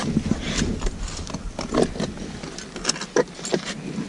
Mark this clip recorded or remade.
recorded